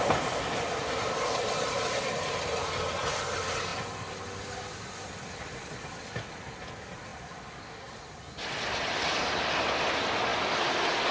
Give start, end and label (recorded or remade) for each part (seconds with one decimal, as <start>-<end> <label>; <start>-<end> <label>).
0.0-11.1 recorded